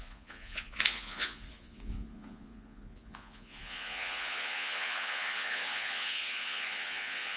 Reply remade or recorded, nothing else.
remade